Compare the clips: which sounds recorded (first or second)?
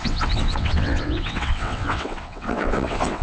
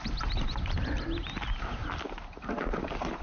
second